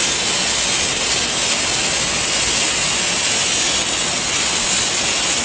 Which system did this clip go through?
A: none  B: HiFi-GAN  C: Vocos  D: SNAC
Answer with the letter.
A